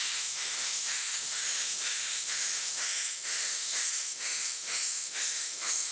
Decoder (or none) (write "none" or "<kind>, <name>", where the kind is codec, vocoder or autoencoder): autoencoder, DAC-VAE